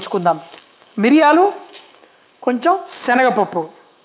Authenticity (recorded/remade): remade